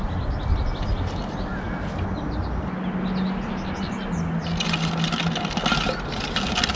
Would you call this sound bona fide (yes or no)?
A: yes